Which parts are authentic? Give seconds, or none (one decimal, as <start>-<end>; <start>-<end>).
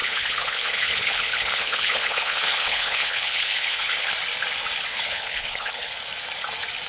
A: 4.1-4.9; 5.9-6.9